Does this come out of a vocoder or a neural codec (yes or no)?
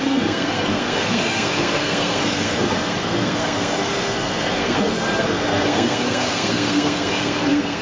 yes